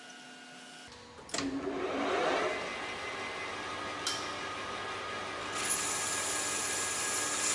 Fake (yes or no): no